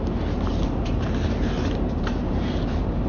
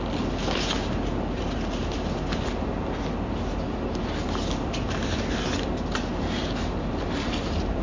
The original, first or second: second